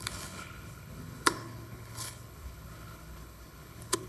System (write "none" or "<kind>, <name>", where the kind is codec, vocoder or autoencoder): codec, HILCodec